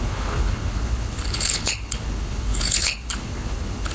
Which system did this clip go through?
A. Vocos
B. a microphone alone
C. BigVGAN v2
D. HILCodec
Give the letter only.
D